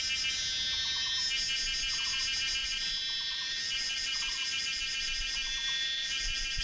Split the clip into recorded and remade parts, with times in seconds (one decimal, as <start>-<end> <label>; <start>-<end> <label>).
0.0-2.6 recorded; 2.6-6.6 remade